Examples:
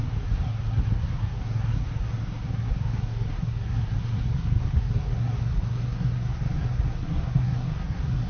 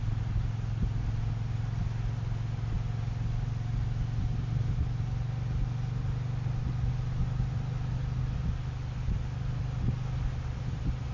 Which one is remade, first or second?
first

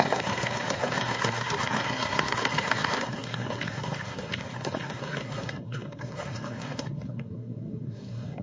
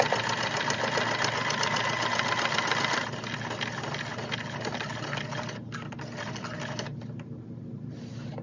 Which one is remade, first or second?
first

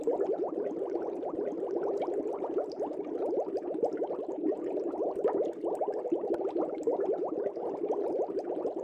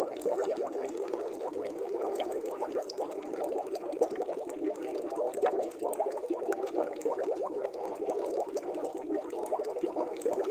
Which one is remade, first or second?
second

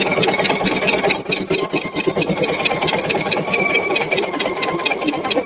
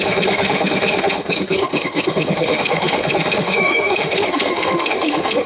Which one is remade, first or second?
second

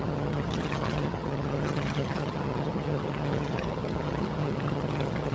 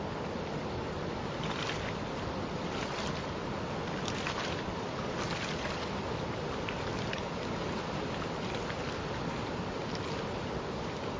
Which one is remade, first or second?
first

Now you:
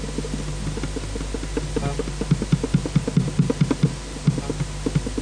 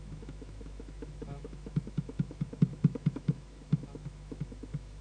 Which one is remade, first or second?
second